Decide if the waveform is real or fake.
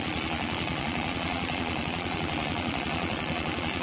fake